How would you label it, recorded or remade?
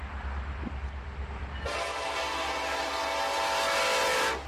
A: recorded